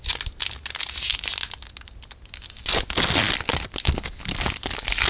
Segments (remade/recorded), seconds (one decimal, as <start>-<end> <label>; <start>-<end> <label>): 0.0-5.1 recorded

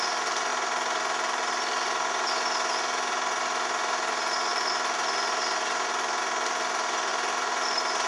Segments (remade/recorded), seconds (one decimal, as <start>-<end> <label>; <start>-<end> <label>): 0.0-0.5 recorded; 0.5-2.3 remade; 2.3-4.5 recorded; 4.5-6.2 remade; 6.2-7.1 recorded; 7.1-8.1 remade

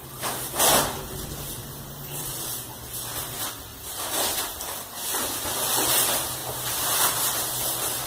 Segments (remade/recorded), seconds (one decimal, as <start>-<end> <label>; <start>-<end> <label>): 0.0-3.7 recorded; 3.7-4.7 remade; 4.7-8.1 recorded

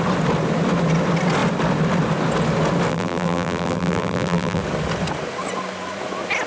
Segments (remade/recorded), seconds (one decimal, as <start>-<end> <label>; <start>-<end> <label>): 0.0-2.9 recorded; 2.9-4.6 remade; 4.6-6.5 recorded

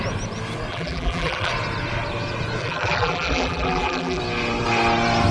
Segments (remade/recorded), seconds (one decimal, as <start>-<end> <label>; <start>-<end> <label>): 0.0-0.7 recorded; 0.7-1.5 remade; 1.5-2.6 recorded; 2.6-4.2 remade; 4.2-5.3 recorded